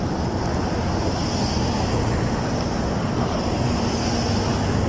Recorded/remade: recorded